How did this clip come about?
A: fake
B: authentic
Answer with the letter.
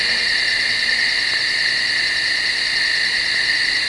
B